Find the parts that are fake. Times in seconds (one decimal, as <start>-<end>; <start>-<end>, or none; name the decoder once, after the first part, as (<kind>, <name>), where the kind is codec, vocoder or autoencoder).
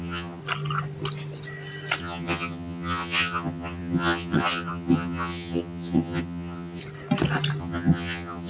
0.0-0.4 (vocoder, HiFi-GAN); 2.0-6.8; 7.6-8.5